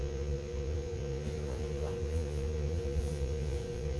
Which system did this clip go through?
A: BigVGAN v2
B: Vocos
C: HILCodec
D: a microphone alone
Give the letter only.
B